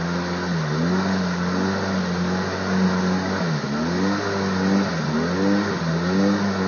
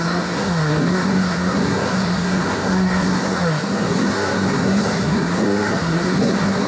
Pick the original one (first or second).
first